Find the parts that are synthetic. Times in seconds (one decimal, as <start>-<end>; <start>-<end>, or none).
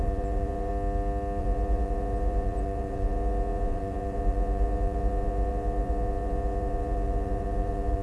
0.0-0.7; 1.4-8.0